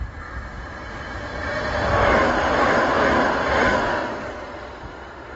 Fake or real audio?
real